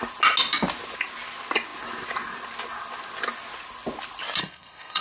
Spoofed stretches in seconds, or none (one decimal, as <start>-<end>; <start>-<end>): 4.4-5.0